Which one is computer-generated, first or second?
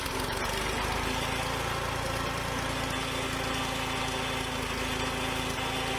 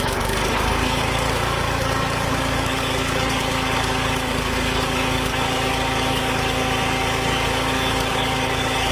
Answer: second